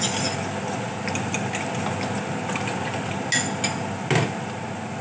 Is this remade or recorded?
recorded